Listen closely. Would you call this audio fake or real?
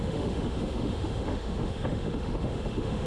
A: fake